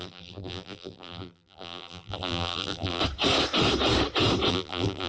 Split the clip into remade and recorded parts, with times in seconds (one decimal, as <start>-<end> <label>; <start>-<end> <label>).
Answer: 0.0-3.0 remade; 3.0-4.5 recorded; 4.5-5.1 remade